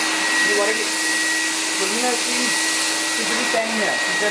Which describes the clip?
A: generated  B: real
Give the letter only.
B